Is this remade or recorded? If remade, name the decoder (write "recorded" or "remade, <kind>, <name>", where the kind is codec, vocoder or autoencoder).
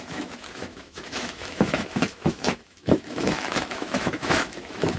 remade, autoencoder, DAC-VAE